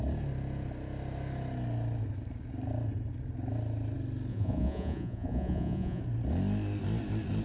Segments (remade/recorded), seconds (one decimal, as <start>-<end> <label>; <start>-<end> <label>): 0.0-4.3 recorded; 4.3-6.0 remade; 6.0-7.4 recorded